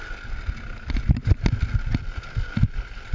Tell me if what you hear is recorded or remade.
recorded